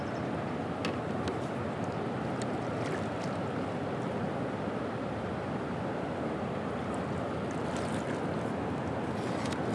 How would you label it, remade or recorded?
recorded